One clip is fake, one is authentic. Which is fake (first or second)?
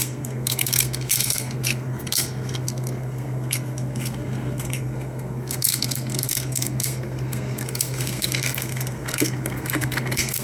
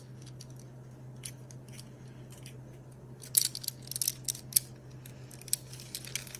first